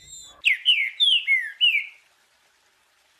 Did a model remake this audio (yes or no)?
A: no